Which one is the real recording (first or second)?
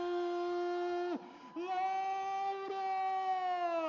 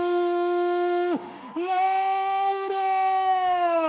first